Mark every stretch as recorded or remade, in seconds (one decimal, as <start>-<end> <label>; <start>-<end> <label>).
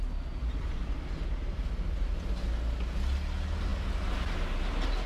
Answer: 0.0-5.1 recorded